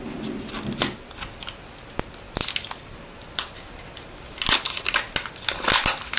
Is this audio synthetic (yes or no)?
no